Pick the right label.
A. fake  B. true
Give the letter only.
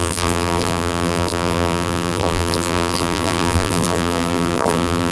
A